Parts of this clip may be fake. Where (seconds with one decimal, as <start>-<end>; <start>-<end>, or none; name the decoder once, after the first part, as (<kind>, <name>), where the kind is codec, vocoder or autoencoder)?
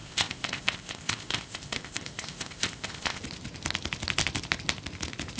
0.0-3.2 (codec, ZipCodec)